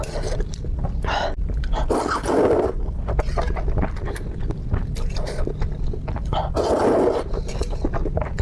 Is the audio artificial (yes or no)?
no